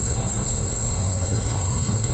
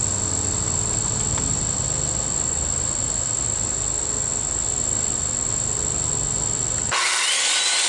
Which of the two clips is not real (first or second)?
first